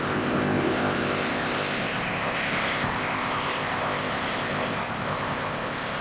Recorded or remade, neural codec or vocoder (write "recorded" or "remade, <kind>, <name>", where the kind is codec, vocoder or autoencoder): remade, codec, ZipCodec